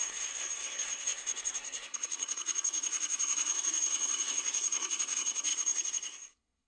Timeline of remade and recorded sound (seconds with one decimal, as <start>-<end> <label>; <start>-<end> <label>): 0.0-6.7 remade